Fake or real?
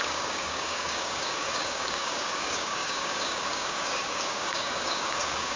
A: fake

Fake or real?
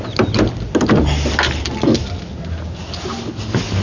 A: real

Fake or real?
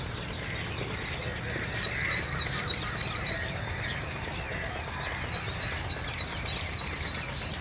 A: real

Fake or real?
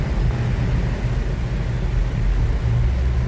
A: real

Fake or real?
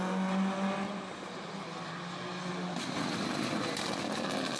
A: real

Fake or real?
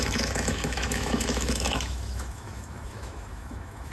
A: fake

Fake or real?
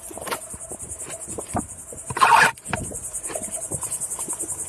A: real